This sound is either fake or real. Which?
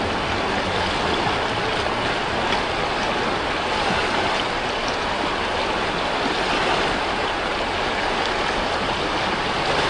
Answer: real